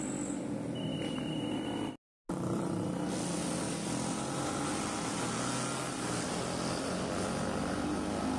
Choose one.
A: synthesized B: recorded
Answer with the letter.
B